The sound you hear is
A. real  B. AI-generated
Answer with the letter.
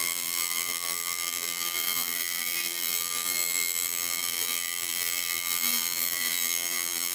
B